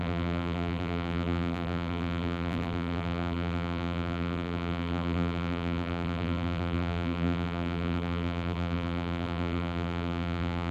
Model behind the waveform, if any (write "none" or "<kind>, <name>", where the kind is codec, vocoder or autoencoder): vocoder, BigVGAN v2